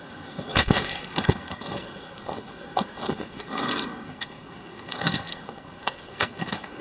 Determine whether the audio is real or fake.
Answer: fake